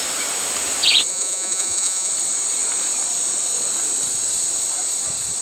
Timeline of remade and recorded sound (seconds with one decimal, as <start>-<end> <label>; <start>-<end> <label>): 0.0-1.1 recorded; 1.1-2.1 remade; 2.1-5.4 recorded

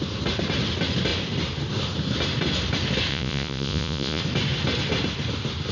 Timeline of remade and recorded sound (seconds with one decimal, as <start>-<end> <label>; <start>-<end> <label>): 0.0-3.1 recorded; 3.1-4.2 remade; 4.2-5.7 recorded

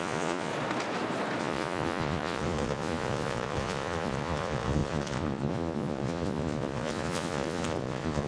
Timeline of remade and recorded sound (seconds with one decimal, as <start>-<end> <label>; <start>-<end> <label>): 0.0-0.5 remade; 0.5-1.4 recorded; 1.4-8.3 remade

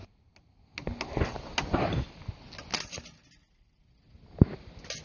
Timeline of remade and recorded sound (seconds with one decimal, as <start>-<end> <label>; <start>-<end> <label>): 0.0-5.0 recorded

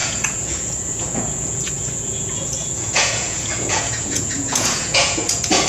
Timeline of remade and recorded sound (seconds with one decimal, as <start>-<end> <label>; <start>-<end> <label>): 0.0-5.7 remade

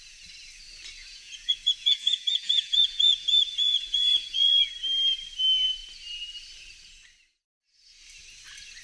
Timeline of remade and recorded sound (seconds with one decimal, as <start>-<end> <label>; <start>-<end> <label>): 0.0-1.0 recorded; 1.0-4.7 remade; 4.7-8.8 recorded

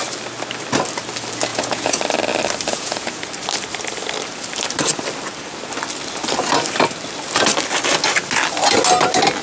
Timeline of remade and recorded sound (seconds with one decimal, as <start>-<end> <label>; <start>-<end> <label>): 0.0-1.5 recorded; 1.5-2.0 remade; 2.0-2.7 recorded; 2.7-3.2 remade; 3.2-9.4 recorded